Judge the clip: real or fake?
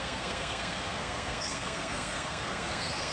fake